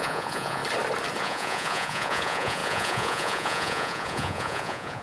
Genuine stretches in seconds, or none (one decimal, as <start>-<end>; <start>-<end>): 0.6-1.2